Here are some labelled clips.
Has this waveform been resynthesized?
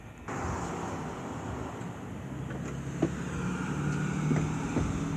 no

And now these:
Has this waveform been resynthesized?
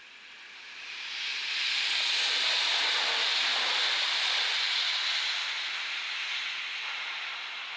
no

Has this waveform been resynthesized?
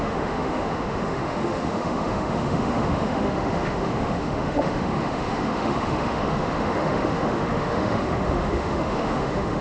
yes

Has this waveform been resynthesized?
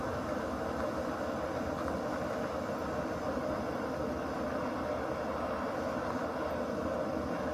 no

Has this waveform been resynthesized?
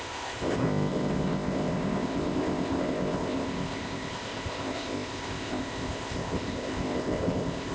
yes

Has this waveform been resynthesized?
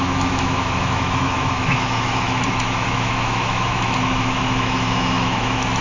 yes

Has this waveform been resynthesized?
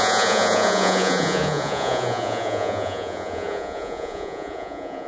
yes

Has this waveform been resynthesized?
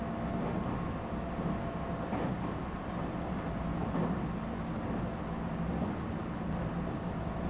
no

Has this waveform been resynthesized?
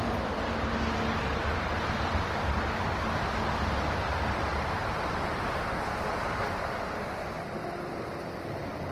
no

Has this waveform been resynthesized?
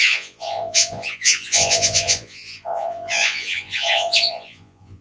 yes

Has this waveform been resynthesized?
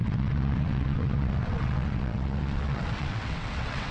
yes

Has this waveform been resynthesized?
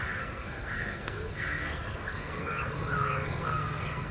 yes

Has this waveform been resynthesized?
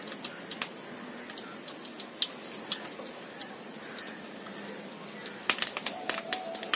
no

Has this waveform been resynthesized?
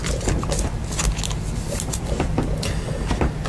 no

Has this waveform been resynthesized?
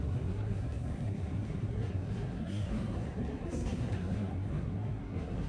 yes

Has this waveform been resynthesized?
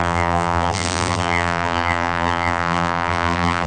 yes